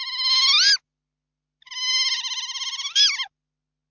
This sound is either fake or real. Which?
real